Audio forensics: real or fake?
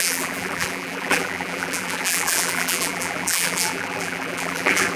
fake